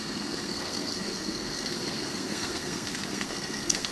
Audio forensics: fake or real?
fake